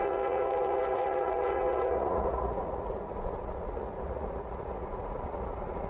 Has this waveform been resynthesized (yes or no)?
yes